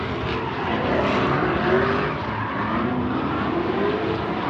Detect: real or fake real